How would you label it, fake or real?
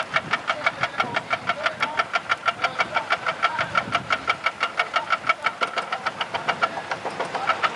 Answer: real